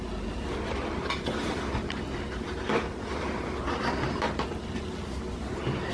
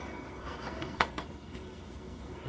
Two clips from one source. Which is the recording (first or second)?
first